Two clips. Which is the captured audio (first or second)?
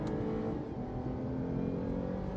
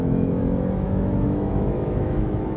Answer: first